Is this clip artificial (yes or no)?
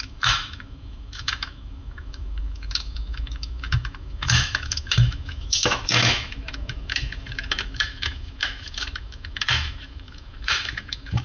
yes